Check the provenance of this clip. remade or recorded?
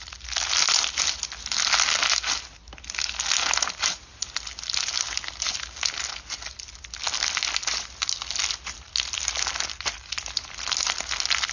recorded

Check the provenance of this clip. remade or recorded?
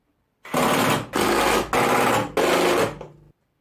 recorded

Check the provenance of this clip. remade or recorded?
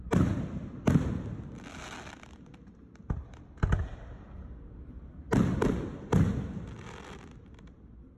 recorded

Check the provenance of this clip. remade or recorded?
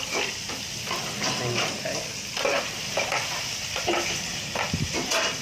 recorded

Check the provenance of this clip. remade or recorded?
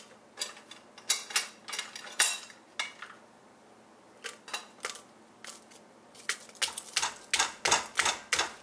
recorded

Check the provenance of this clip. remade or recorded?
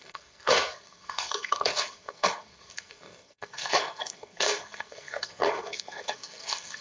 remade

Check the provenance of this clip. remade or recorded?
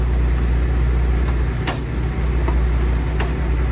recorded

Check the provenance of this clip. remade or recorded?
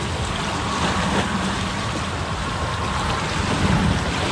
recorded